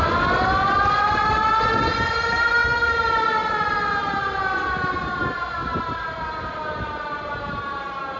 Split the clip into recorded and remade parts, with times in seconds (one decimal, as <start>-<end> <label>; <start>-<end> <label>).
0.0-8.2 recorded